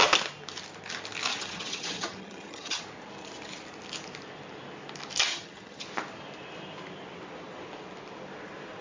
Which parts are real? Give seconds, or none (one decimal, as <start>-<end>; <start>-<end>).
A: 0.0-1.3; 2.8-5.3; 5.8-8.8